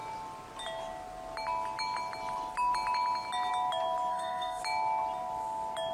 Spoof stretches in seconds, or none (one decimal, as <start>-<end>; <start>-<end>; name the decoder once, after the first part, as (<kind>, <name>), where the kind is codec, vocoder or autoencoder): 4.1-4.6 (codec, SNAC)